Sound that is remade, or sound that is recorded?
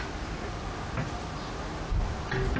recorded